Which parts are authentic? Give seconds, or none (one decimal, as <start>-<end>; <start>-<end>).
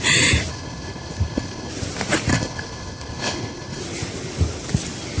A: 0.0-0.5; 1.7-2.3; 3.8-5.2